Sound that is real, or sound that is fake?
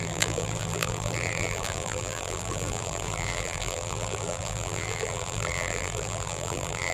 fake